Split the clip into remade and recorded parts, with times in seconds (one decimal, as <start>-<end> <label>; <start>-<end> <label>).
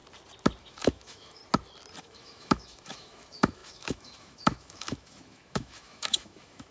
0.0-0.6 recorded; 0.6-1.4 remade; 1.4-2.0 recorded; 2.0-6.7 remade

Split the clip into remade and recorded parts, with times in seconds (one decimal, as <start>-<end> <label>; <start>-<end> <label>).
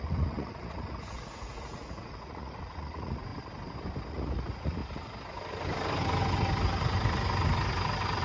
0.0-3.3 remade; 3.3-4.1 recorded; 4.1-4.8 remade; 4.8-8.2 recorded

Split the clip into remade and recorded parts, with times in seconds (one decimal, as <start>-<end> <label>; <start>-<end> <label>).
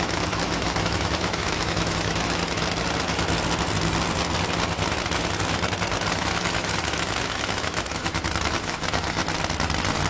0.0-2.4 remade; 2.4-6.1 recorded; 6.1-9.2 remade; 9.2-10.1 recorded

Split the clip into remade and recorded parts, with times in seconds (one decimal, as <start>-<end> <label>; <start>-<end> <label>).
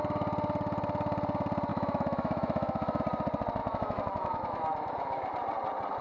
0.0-1.7 recorded; 1.7-3.0 remade; 3.0-3.6 recorded; 3.6-5.3 remade; 5.3-6.0 recorded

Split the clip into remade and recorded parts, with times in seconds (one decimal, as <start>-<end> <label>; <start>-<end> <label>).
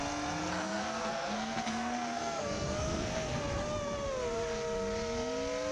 0.0-0.4 recorded; 0.4-3.4 remade; 3.4-5.7 recorded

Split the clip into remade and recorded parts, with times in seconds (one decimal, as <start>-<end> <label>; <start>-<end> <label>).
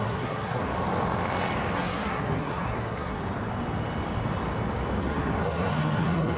0.0-0.6 remade; 0.6-1.7 recorded; 1.7-3.2 remade; 3.2-5.0 recorded; 5.0-6.4 remade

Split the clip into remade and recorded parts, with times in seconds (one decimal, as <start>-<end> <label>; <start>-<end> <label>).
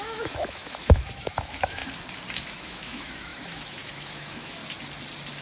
0.0-1.8 remade; 1.8-2.5 recorded; 2.5-4.6 remade; 4.6-5.4 recorded